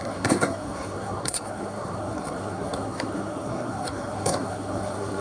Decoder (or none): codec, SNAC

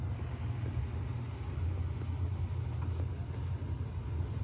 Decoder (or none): none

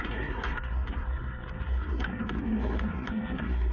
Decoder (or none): codec, SNAC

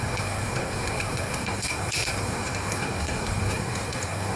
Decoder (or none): codec, SNAC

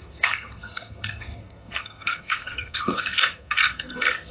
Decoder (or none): codec, SNAC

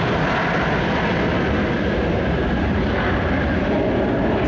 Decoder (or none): none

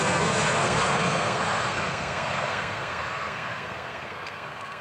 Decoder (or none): codec, SNAC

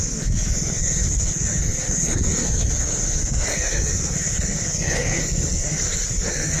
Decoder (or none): codec, SNAC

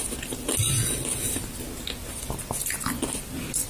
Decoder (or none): none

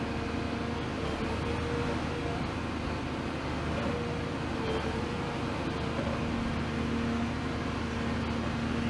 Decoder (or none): none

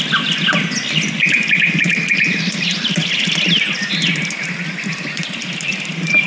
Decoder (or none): none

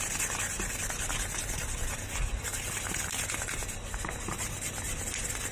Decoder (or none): none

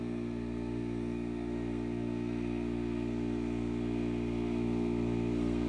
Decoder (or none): codec, SNAC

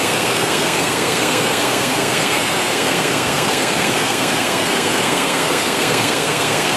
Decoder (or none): codec, SNAC